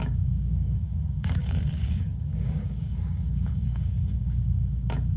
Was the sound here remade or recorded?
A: remade